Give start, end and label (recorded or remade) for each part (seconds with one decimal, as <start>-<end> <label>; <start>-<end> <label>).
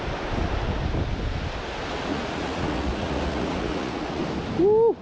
0.0-2.1 recorded; 2.1-4.2 remade; 4.2-5.0 recorded